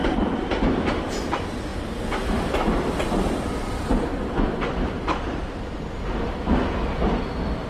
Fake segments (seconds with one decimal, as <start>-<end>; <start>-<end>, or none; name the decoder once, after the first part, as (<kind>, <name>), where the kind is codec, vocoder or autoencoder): 1.7-6.3 (vocoder, BigVGAN v2)